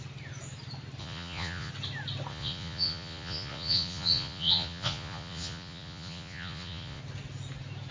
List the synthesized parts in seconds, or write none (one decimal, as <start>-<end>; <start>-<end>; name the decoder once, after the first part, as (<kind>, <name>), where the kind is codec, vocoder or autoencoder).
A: 1.0-1.7 (vocoder, Vocos); 2.3-7.0